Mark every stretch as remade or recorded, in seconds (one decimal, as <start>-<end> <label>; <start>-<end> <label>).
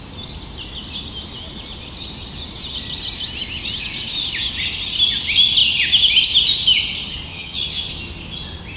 0.0-7.3 recorded; 7.3-7.9 remade; 7.9-8.8 recorded